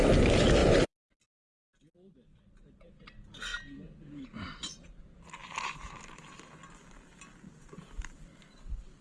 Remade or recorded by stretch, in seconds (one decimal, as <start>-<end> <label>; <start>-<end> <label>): 0.0-0.6 recorded; 0.6-1.2 remade; 1.2-5.4 recorded; 5.4-6.6 remade; 6.6-9.0 recorded